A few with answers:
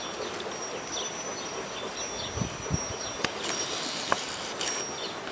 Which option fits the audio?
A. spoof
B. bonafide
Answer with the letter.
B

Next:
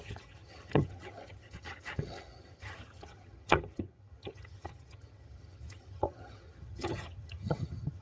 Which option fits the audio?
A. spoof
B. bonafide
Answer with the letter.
A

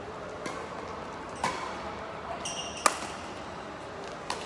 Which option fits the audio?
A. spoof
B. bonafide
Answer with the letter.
B